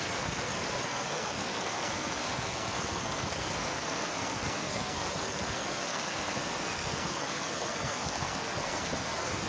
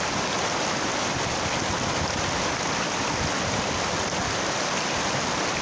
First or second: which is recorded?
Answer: second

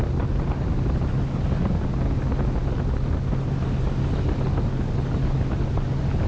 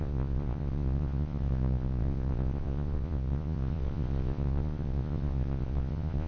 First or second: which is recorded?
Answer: first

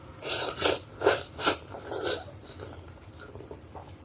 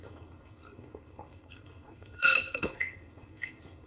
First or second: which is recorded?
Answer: first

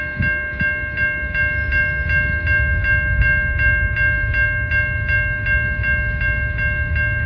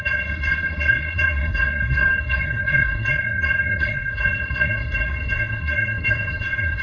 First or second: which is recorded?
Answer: first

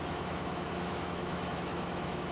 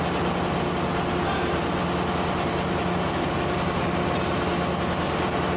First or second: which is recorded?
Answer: second